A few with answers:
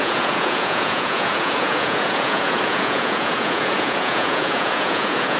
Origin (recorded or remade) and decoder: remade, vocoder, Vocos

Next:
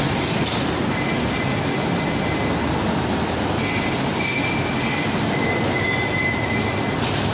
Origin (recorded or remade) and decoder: recorded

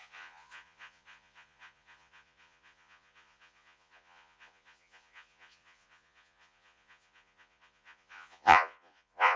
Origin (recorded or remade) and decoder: remade, vocoder, Vocos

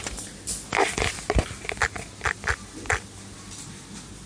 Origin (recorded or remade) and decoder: recorded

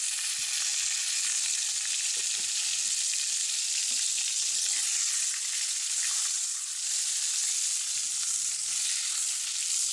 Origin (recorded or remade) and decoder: recorded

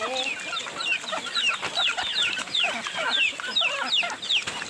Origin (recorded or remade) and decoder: recorded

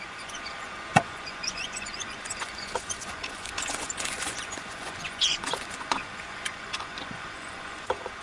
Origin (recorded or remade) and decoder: remade, vocoder, Vocos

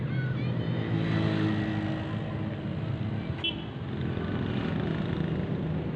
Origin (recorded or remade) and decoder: recorded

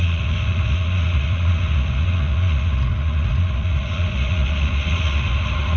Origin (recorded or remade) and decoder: remade, vocoder, Vocos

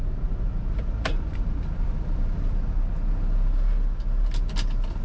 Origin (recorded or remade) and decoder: recorded